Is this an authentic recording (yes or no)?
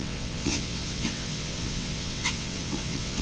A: no